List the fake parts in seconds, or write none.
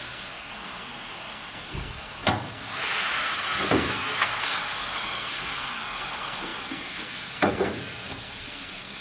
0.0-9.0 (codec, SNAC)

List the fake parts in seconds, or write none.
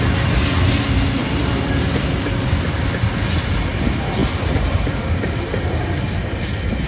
1.2-2.9 (vocoder, BigVGAN v2); 4.2-5.2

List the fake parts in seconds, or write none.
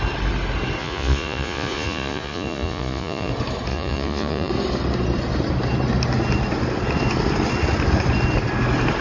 0.8-3.3 (vocoder, Vocos); 3.7-4.5